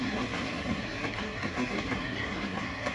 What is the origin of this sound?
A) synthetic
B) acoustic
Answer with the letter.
A